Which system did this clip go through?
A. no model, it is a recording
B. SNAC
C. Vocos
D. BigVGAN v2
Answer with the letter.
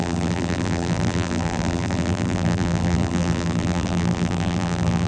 D